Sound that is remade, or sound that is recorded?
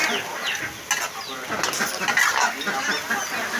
recorded